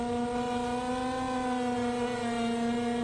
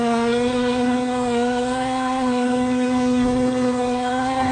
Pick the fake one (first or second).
second